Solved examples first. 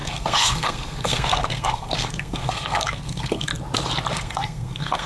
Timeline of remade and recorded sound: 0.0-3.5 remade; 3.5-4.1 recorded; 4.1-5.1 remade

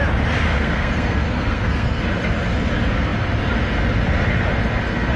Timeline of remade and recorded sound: 0.0-0.5 recorded; 0.5-2.0 remade; 2.0-5.2 recorded

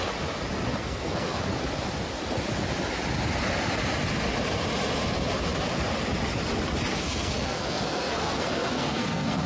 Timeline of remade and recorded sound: 0.0-0.7 recorded; 0.7-1.4 remade; 1.4-6.9 recorded; 6.9-9.5 remade

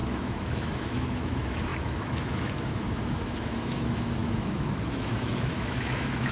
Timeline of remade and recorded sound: 0.0-6.3 remade

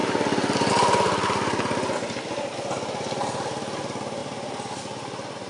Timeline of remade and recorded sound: 0.0-5.5 recorded

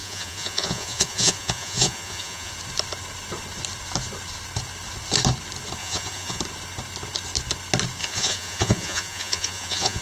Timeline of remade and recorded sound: 0.0-2.5 remade; 2.5-5.8 recorded; 5.8-6.4 remade; 6.4-8.0 recorded; 8.0-10.0 remade

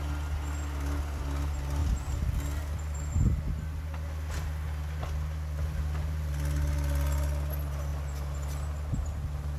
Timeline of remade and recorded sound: 0.0-9.6 recorded

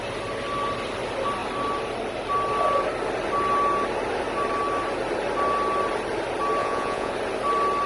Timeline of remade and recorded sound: 0.0-6.6 recorded; 6.6-7.1 remade; 7.1-7.9 recorded